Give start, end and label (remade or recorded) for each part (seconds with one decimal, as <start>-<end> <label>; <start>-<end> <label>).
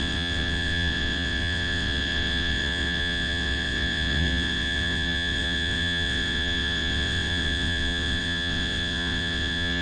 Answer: 0.0-9.8 remade